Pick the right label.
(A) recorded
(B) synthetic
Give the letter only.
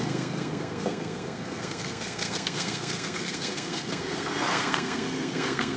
B